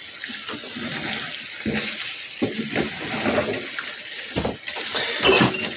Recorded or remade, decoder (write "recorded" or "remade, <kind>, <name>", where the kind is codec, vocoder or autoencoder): recorded